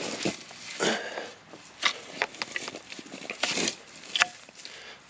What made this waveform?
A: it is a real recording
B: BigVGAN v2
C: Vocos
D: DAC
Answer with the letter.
A